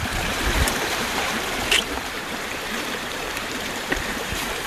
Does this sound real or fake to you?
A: fake